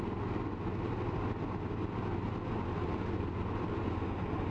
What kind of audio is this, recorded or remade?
recorded